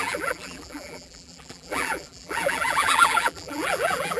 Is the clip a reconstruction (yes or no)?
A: yes